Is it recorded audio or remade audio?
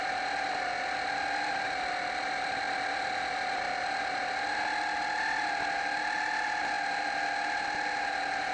recorded